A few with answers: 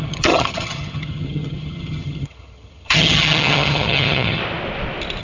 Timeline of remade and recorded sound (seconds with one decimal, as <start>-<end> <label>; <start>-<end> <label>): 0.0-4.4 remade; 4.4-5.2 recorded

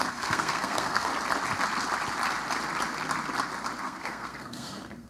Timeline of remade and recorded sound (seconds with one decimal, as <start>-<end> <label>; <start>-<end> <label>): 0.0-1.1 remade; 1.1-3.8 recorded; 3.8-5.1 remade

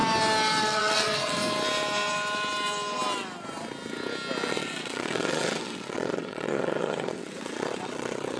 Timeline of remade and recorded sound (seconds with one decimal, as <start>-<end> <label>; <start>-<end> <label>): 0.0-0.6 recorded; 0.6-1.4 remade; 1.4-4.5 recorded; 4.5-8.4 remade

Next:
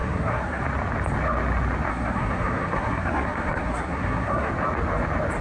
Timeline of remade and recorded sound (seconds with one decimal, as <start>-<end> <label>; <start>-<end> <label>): 0.0-0.6 remade; 0.6-1.9 recorded; 1.9-4.5 remade; 4.5-5.4 recorded